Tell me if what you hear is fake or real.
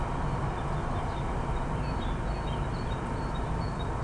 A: real